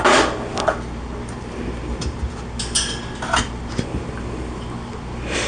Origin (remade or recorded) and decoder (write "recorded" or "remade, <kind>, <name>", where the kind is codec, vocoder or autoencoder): recorded